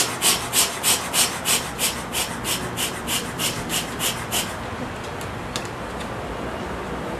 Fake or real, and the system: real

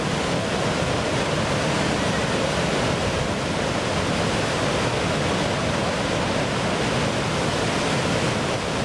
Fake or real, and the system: real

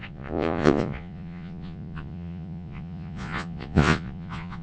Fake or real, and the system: fake, vocoder, Vocos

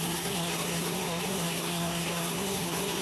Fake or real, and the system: fake, codec, SNAC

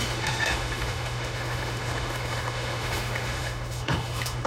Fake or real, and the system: fake, autoencoder, DAC-VAE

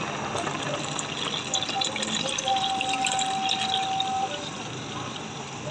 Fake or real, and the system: real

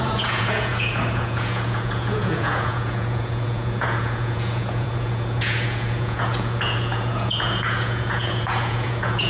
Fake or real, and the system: fake, vocoder, Vocos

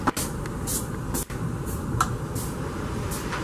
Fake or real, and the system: real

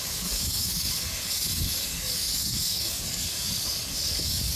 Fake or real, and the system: fake, codec, DAC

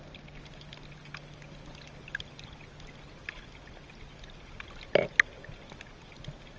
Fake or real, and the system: real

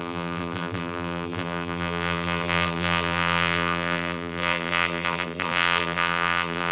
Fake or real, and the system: fake, vocoder, BigVGAN v2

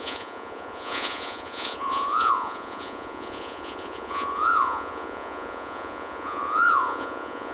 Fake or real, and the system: fake, vocoder, Vocos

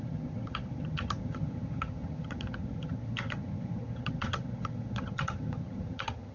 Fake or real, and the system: fake, vocoder, HiFi-GAN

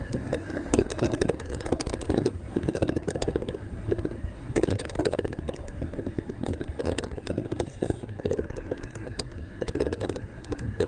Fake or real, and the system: fake, codec, SNAC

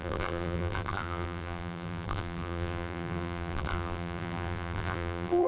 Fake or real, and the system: fake, vocoder, BigVGAN v2